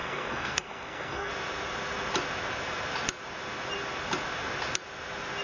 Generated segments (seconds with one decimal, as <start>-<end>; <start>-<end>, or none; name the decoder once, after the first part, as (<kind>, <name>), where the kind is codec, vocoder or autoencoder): 0.0-1.3 (codec, SNAC)